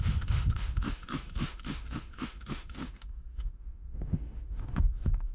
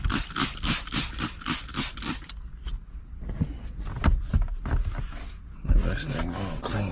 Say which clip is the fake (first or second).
first